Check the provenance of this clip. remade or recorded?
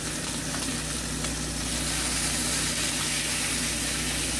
recorded